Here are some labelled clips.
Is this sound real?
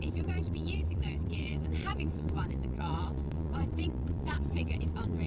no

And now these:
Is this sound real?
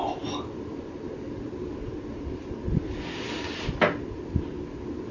yes